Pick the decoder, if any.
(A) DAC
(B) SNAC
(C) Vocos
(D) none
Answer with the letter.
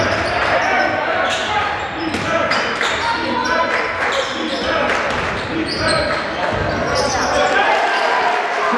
D